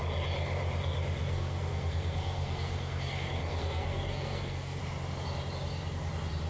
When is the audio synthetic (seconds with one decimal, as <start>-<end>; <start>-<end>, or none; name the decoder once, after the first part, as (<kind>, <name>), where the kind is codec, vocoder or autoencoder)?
1.2-4.8 (codec, SNAC)